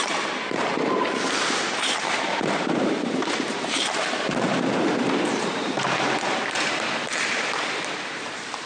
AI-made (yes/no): yes